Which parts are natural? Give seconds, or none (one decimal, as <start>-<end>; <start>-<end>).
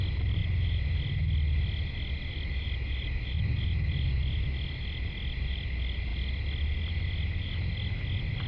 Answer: 0.0-8.5